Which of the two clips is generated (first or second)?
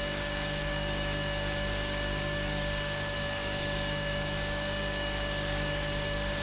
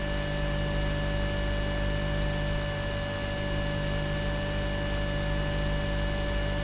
first